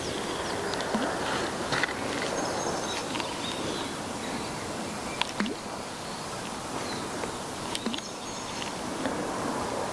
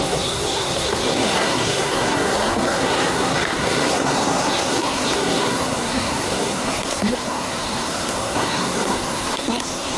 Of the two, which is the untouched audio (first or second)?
first